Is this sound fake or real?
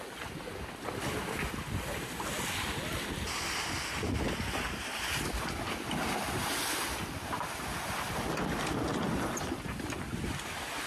real